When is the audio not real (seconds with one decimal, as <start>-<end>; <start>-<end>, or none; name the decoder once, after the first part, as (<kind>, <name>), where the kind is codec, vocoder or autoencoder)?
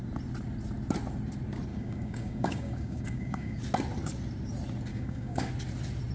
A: 1.7-3.6 (codec, DAC); 4.9-5.5